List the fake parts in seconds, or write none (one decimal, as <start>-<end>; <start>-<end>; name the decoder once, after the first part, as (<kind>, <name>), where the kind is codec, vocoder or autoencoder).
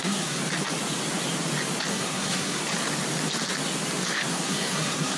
0.0-0.4 (codec, SNAC); 1.9-2.6; 4.3-5.2